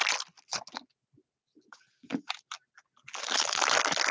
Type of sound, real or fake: real